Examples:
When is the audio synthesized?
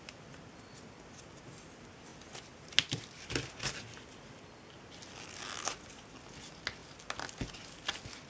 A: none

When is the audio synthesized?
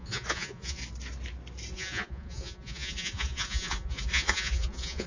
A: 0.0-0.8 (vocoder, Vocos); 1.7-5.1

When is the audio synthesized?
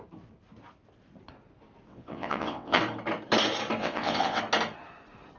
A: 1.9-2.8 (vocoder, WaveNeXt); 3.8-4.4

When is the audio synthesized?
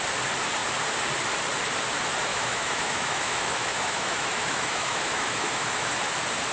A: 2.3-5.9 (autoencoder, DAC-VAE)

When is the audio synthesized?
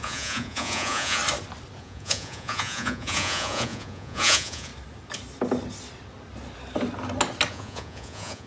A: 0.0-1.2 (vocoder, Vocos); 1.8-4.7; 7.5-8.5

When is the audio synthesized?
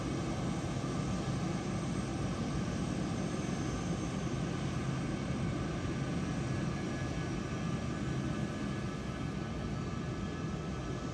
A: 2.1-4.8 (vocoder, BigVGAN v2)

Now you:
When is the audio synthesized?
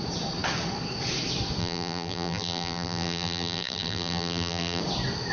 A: 1.6-4.8 (vocoder, BigVGAN v2)